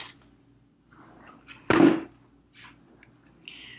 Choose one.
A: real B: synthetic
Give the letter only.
A